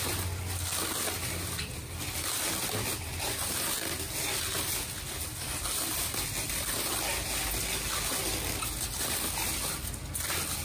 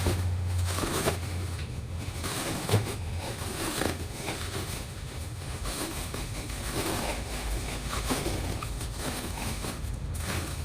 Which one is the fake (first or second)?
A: second